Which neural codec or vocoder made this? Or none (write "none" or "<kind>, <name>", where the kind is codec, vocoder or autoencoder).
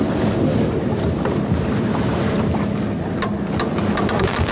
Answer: none